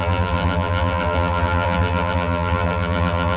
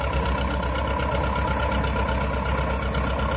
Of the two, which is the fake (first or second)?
first